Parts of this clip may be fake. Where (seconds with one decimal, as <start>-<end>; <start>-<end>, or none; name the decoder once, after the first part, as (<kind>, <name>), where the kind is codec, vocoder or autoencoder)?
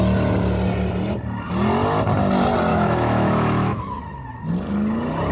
2.7-4.0 (autoencoder, DAC-VAE)